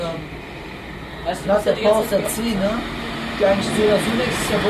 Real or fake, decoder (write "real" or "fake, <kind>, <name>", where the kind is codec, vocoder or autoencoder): real